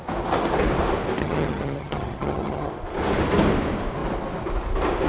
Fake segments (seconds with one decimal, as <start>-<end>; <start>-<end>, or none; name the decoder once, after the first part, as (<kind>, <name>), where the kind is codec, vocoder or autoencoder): 1.2-2.7 (vocoder, HiFi-GAN)